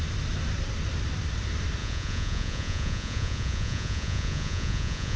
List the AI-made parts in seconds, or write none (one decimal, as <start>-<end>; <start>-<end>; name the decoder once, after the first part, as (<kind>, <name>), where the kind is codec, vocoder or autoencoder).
1.8-5.2 (vocoder, Vocos)